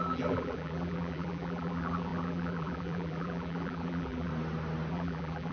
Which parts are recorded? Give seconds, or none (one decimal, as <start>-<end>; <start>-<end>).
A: 4.3-4.9